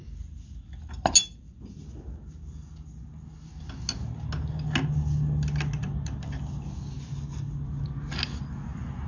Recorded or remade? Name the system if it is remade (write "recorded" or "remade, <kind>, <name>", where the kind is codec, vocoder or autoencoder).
recorded